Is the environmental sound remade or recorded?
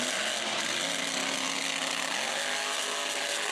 recorded